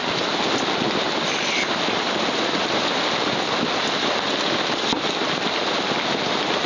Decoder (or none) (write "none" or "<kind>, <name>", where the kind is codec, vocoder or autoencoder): none